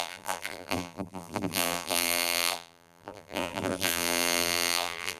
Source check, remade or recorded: remade